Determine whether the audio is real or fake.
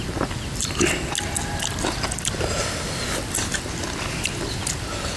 real